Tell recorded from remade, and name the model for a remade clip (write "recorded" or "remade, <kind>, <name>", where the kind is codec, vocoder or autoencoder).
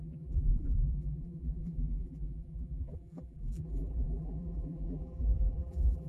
remade, vocoder, BigVGAN v2